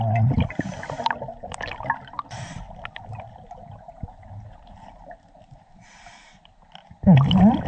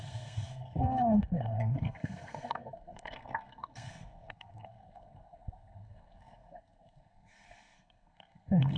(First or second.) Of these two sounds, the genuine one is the first